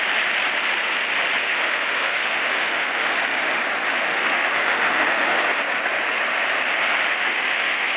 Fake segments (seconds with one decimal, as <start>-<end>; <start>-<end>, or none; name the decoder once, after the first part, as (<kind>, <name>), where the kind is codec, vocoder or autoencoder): 1.4-3.4 (autoencoder, DAC-VAE); 3.9-5.4; 7.1-8.0